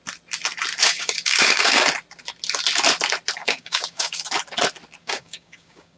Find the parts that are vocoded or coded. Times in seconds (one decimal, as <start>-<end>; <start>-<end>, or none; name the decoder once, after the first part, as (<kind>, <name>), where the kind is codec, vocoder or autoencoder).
0.8-1.8 (codec, DAC); 3.4-4.3; 5.0-6.0